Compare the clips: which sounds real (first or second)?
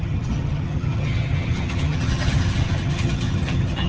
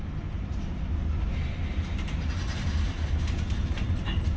second